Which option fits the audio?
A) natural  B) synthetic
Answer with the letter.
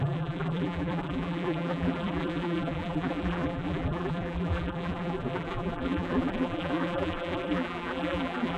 B